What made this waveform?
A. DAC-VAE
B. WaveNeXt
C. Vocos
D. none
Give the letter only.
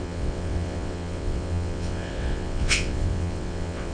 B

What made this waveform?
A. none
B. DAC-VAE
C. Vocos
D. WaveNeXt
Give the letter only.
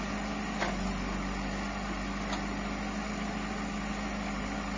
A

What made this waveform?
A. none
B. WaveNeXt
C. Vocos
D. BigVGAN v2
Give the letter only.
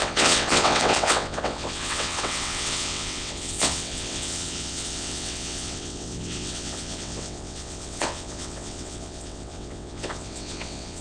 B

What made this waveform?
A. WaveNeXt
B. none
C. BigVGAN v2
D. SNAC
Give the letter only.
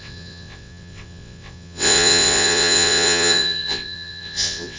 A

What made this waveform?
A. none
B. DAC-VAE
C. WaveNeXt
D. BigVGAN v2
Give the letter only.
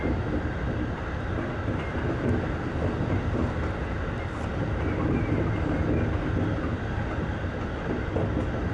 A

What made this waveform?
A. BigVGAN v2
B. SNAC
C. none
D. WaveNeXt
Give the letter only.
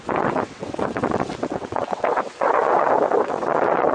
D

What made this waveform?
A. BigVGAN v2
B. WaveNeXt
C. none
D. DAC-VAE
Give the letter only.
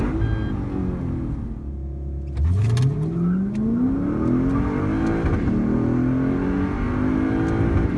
C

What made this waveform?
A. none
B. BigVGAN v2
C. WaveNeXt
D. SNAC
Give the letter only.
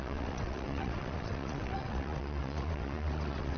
C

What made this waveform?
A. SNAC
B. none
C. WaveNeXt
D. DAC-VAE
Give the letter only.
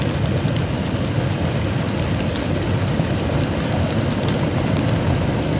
B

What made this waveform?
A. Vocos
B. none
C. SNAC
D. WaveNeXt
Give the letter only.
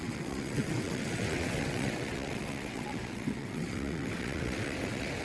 D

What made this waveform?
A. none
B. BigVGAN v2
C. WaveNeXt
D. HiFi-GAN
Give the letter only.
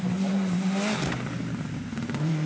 A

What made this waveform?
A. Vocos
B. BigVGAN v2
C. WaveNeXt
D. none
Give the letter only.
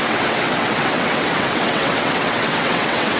C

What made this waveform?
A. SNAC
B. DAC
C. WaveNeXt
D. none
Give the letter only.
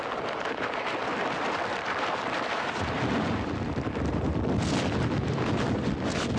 D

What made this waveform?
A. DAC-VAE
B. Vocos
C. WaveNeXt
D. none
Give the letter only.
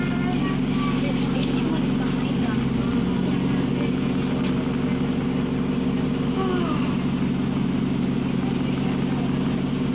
D